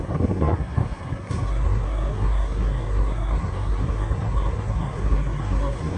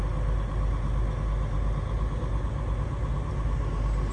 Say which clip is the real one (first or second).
second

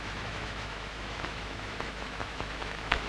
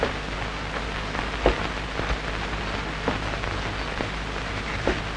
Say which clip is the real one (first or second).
second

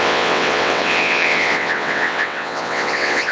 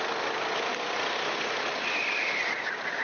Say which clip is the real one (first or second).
second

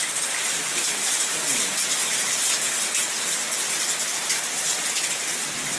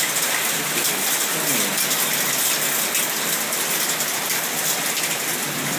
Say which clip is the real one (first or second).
second